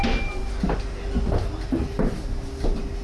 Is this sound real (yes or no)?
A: yes